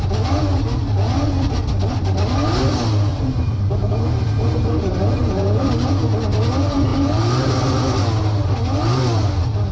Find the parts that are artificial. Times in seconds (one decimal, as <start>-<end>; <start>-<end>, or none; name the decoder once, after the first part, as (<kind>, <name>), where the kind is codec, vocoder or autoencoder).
3.1-3.7 (vocoder, BigVGAN v2); 5.2-5.9; 6.9-7.5